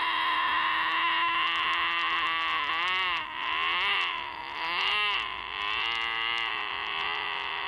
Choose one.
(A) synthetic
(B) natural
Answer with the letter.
B